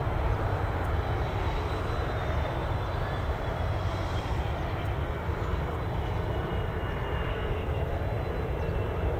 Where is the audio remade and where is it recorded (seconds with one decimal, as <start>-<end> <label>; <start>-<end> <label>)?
0.0-7.3 recorded; 7.3-8.0 remade; 8.0-9.2 recorded